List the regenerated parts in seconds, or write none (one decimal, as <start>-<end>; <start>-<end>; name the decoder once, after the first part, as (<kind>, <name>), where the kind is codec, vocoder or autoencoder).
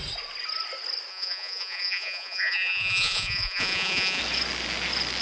1.1-4.2 (vocoder, Vocos)